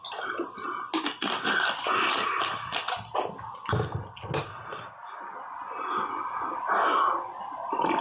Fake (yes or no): no